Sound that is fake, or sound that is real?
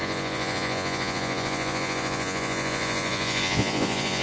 fake